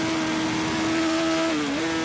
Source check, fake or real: real